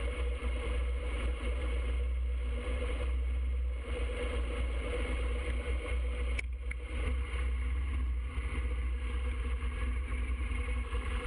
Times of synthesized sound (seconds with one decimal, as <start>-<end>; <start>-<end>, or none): none